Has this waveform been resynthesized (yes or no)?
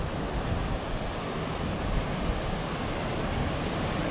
no